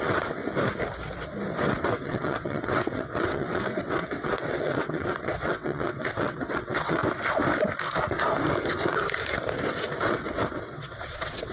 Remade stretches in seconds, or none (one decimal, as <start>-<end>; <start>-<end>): 0.0-0.4; 1.9-7.0; 10.5-11.5